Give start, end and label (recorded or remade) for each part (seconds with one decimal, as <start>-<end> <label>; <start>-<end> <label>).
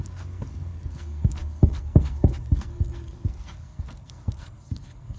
0.0-5.2 remade